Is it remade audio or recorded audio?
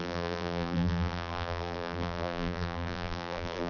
remade